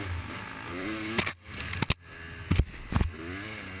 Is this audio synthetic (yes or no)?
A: no